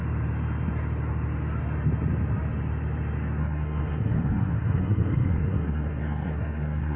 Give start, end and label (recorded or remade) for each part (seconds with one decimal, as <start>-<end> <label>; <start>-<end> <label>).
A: 0.0-3.4 recorded; 3.4-7.0 remade